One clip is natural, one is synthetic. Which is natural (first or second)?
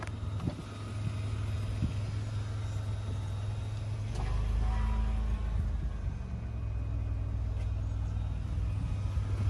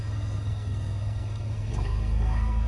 first